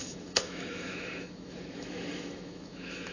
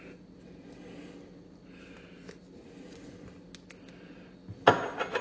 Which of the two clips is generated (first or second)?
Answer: first